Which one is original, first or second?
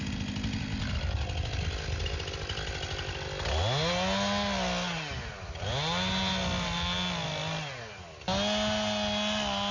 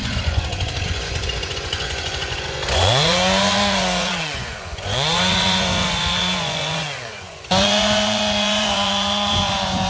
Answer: first